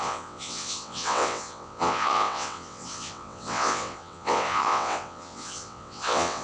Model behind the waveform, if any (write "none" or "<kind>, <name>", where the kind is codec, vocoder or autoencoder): vocoder, WaveNeXt